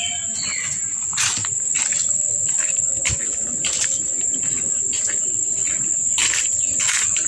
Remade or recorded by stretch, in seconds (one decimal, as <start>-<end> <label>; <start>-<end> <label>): 0.0-7.3 recorded